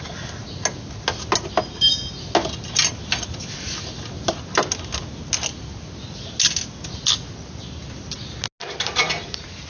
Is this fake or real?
real